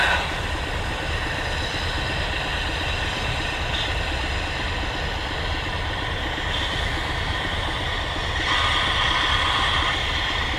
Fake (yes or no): no